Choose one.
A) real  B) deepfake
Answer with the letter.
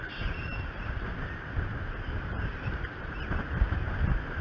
B